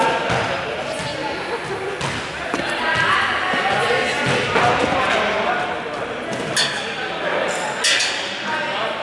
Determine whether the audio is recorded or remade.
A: recorded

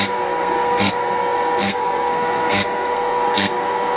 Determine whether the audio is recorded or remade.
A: remade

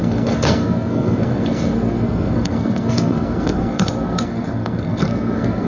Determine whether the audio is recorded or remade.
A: remade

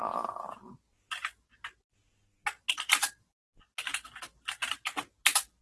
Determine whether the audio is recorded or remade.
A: recorded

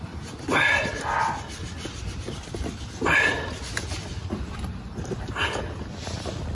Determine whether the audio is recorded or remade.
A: recorded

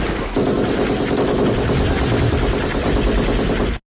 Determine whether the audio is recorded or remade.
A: recorded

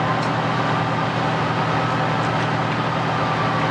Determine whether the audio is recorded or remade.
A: recorded